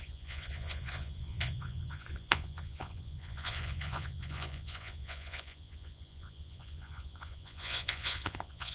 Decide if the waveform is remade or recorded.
remade